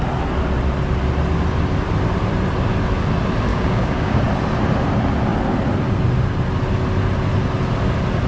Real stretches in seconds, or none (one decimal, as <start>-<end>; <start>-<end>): 0.0-3.5; 4.2-8.3